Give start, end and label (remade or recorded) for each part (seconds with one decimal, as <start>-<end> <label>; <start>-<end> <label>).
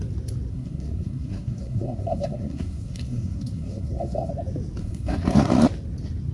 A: 0.0-0.5 recorded; 0.5-4.3 remade; 4.3-4.8 recorded; 4.8-5.5 remade; 5.5-6.3 recorded